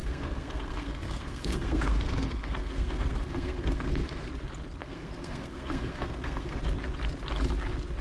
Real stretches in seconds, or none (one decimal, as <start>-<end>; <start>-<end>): 4.3-4.8; 6.6-8.0